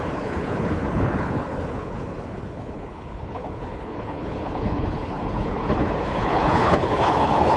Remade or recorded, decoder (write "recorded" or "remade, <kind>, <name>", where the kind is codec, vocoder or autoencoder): remade, codec, HILCodec